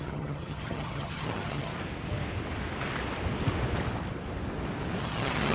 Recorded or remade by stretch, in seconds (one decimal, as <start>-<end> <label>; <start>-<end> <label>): 0.0-1.7 remade; 1.7-5.0 recorded; 5.0-5.5 remade